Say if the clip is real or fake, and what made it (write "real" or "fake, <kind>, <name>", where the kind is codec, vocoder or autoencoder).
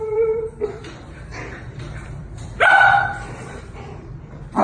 fake, vocoder, BigVGAN v2